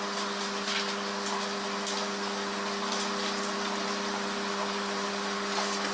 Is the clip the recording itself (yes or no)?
no